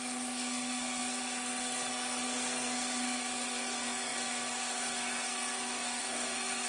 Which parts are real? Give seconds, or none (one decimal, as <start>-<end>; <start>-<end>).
none